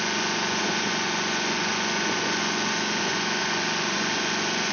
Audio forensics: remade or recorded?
remade